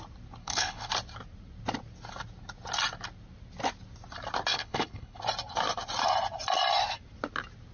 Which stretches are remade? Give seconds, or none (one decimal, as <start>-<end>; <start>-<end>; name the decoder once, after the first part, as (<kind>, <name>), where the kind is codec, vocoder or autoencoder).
0.4-0.9 (codec, HILCodec); 4.5-5.2